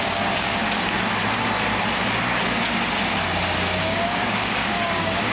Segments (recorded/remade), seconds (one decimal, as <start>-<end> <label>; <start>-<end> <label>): 0.0-0.6 remade; 0.6-3.8 recorded; 3.8-5.3 remade